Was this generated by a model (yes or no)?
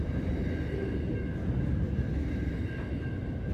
no